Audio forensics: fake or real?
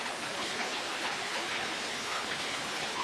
fake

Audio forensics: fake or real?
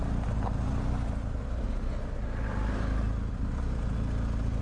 real